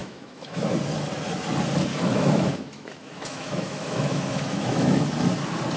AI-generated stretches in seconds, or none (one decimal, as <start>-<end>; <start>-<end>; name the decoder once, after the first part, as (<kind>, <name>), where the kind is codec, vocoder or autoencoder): 0.0-0.6 (autoencoder, DAC-VAE); 1.9-5.0